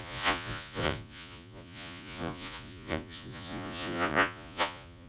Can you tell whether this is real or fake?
fake